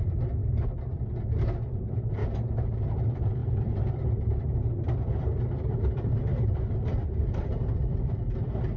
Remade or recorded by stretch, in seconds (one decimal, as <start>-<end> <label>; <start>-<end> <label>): 0.0-2.2 remade; 2.2-2.7 recorded; 2.7-8.8 remade